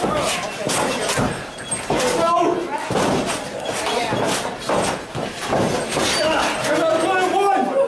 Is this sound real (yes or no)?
yes